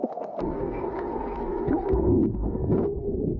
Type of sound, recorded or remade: remade